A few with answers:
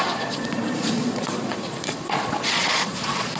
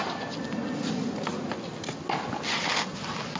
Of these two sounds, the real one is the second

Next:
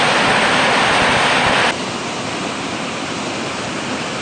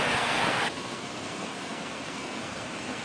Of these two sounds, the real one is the first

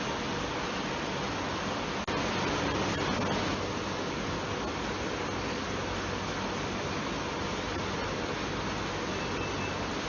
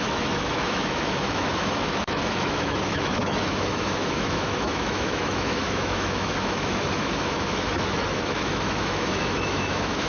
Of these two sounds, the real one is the first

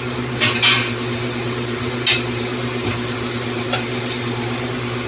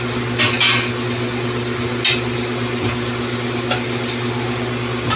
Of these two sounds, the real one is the second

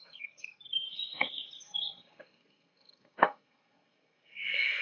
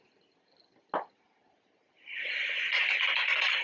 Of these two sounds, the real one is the second